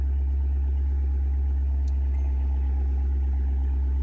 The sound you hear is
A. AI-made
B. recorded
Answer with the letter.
B